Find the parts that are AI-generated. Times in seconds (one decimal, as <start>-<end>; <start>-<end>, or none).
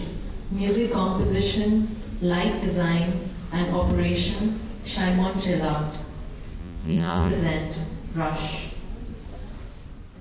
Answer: 6.6-7.3